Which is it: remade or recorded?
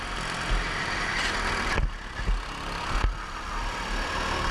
recorded